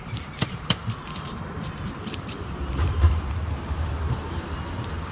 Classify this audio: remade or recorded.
remade